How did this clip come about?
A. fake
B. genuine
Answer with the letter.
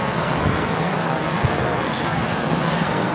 A